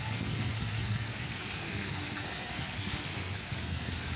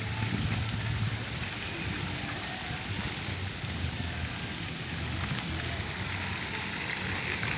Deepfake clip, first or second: first